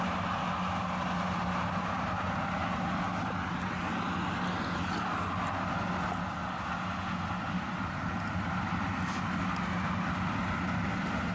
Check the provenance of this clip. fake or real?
real